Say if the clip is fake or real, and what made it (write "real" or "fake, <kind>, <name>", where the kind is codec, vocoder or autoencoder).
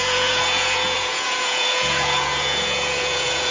fake, vocoder, Vocos